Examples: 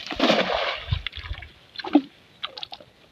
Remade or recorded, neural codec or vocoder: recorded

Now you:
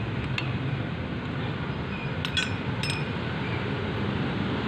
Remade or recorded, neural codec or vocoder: recorded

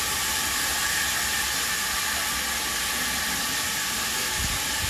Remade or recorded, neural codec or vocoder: recorded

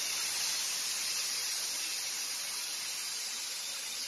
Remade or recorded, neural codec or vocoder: recorded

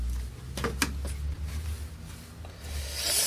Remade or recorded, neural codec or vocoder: recorded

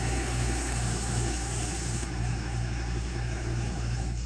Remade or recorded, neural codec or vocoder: remade, codec, SNAC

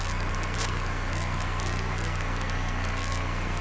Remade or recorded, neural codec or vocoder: remade, codec, SNAC